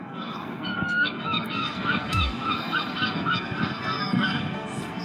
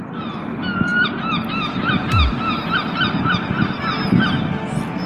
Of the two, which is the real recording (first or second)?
second